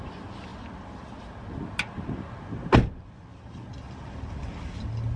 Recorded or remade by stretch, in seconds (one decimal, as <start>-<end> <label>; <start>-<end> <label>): 0.0-5.2 recorded